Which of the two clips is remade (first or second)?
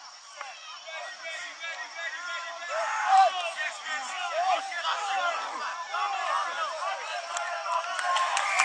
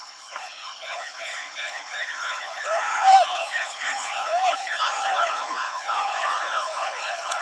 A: second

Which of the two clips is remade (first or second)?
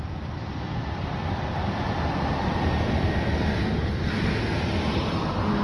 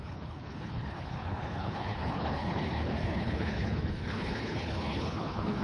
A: second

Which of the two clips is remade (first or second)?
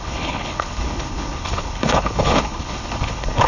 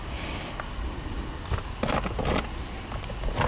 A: first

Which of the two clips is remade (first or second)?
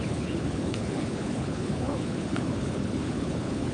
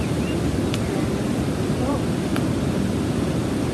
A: first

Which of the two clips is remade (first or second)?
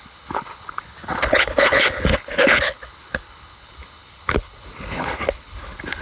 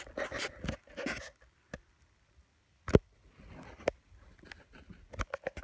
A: first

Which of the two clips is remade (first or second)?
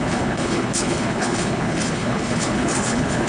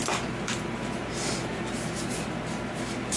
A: first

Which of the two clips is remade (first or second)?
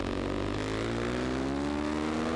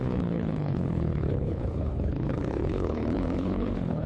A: second